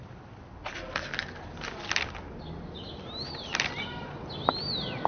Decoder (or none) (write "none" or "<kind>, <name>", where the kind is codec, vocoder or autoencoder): none